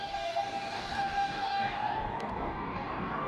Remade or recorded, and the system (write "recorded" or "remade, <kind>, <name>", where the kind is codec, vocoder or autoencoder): remade, codec, DAC